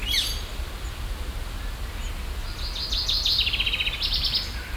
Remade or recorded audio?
recorded